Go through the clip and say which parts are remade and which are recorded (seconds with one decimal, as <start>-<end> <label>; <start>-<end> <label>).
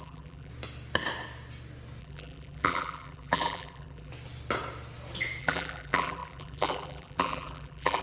0.0-0.5 remade; 0.5-2.0 recorded; 2.0-4.1 remade; 4.1-5.4 recorded; 5.4-8.0 remade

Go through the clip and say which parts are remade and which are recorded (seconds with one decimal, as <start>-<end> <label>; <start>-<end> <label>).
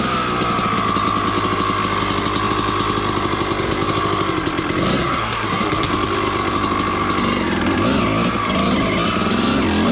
0.0-5.0 recorded; 5.0-5.9 remade; 5.9-9.9 recorded